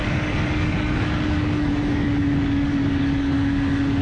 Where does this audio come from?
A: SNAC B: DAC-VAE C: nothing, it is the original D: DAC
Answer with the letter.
D